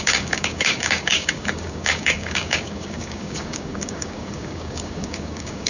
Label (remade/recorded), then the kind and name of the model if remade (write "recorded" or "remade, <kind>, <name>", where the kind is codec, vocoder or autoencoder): remade, codec, DAC